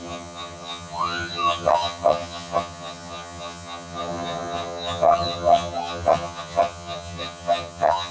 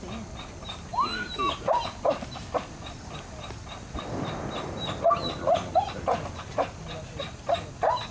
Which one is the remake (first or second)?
first